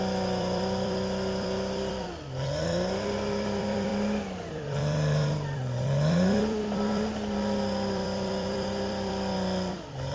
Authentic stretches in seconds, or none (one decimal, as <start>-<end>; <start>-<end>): 3.9-4.5